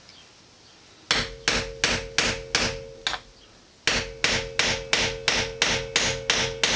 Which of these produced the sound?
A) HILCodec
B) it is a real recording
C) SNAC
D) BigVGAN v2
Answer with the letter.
B